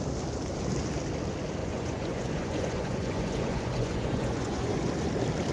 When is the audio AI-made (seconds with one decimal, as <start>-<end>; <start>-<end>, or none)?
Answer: 1.6-4.9